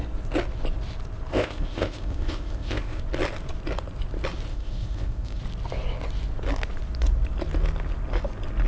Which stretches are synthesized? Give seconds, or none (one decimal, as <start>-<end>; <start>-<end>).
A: 1.3-3.0; 4.5-5.4